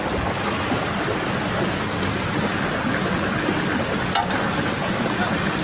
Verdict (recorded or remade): recorded